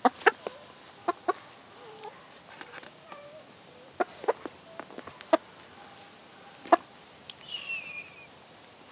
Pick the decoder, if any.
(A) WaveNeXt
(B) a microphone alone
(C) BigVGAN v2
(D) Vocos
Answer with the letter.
B